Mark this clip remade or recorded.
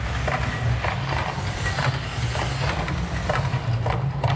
recorded